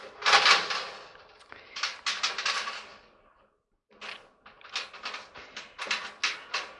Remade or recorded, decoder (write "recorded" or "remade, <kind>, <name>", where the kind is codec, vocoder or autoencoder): recorded